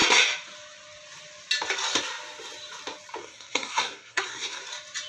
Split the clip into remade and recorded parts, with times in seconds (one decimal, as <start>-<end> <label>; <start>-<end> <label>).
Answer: 0.0-3.2 recorded; 3.2-4.6 remade; 4.6-5.1 recorded